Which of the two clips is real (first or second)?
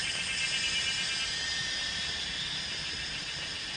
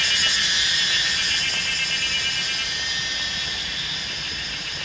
second